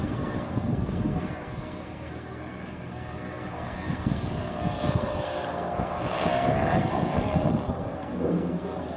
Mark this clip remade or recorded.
remade